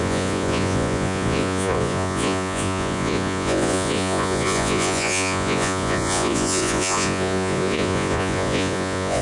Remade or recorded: remade